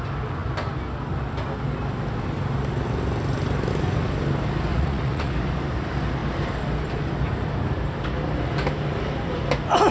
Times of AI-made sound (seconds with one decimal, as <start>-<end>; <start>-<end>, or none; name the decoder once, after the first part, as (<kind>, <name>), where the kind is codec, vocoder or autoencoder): 4.7-5.3 (vocoder, Vocos)